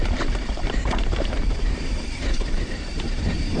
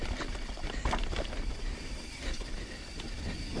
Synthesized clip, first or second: first